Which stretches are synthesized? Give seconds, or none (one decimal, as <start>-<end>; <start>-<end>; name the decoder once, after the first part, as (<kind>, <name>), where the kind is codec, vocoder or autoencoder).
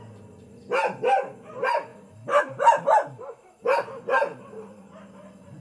none